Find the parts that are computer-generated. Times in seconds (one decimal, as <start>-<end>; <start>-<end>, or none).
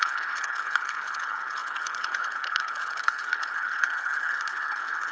0.0-5.1